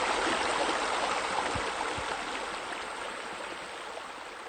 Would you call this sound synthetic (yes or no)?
no